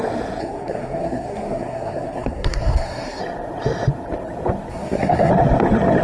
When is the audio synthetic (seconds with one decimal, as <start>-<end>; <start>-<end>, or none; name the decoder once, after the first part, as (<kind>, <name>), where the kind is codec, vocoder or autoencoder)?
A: 0.4-3.2 (codec, SNAC); 4.7-5.3